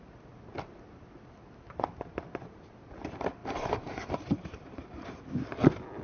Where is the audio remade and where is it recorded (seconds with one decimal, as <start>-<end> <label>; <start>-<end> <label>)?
0.0-3.4 recorded; 3.4-5.2 remade; 5.2-6.0 recorded